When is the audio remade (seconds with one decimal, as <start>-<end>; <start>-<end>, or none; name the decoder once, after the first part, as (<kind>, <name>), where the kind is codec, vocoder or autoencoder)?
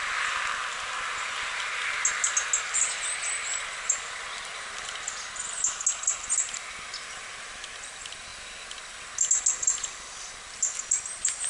none